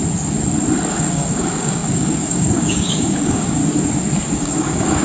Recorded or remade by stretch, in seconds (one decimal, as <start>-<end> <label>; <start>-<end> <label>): 0.0-0.9 recorded; 0.9-3.6 remade; 3.6-4.3 recorded; 4.3-5.0 remade